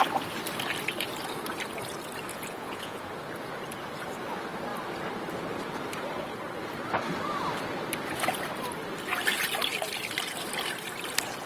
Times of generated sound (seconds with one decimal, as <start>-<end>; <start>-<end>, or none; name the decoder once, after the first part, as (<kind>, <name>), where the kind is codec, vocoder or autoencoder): 2.3-3.0 (vocoder, Vocos)